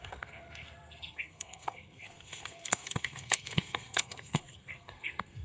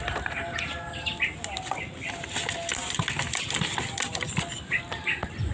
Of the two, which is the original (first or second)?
second